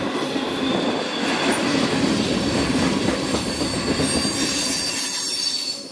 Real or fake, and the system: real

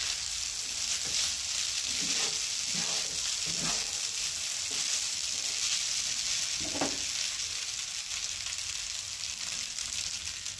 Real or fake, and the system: real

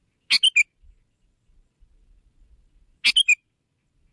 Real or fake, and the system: real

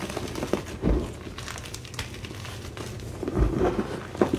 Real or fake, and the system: real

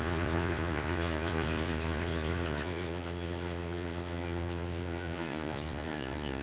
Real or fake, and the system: fake, vocoder, Vocos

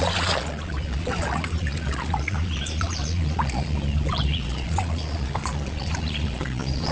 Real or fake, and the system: fake, vocoder, Vocos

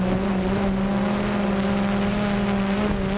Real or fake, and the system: real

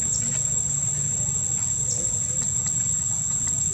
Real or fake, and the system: real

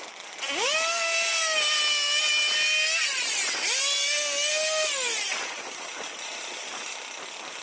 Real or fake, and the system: real